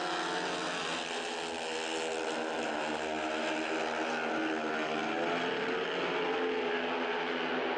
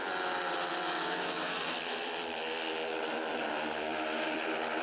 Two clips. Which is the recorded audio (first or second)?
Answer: first